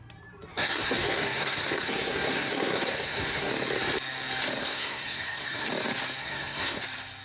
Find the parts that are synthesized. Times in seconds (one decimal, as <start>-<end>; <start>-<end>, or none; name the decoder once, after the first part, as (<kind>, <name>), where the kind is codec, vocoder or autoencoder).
0.5-3.5 (codec, SNAC); 4.6-5.7; 6.2-6.8